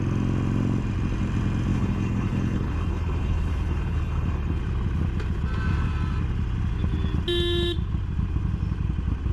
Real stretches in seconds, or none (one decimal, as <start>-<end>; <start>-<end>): 0.0-1.7; 4.6-9.3